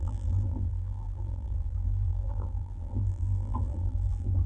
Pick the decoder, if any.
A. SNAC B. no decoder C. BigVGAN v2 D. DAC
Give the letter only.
C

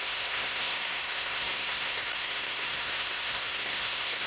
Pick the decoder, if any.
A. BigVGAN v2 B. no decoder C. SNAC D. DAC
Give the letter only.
C